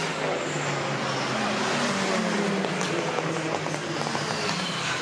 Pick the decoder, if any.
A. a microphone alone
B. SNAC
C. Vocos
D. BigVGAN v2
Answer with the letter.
A